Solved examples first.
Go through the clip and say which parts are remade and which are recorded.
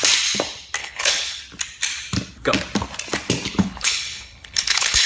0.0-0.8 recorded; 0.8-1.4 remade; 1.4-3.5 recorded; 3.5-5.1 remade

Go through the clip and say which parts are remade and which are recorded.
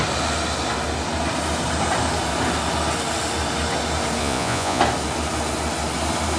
0.0-4.2 recorded; 4.2-4.8 remade; 4.8-6.4 recorded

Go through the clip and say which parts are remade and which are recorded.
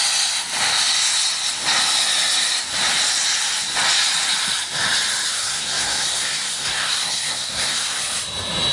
0.0-5.3 recorded; 5.3-8.0 remade; 8.0-8.7 recorded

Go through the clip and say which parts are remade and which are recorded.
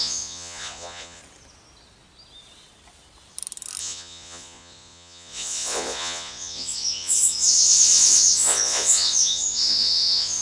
0.0-1.2 remade; 1.2-3.8 recorded; 3.8-10.4 remade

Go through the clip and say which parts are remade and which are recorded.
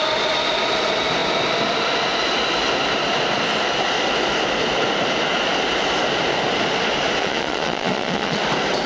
0.0-7.2 recorded; 7.2-8.4 remade; 8.4-8.9 recorded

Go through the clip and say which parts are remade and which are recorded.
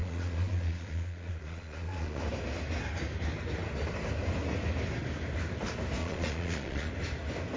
0.0-2.2 remade; 2.2-6.0 recorded; 6.0-6.9 remade; 6.9-7.6 recorded